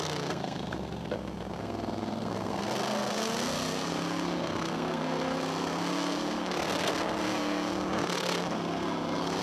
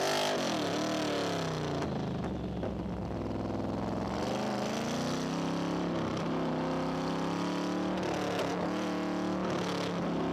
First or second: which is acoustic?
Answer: second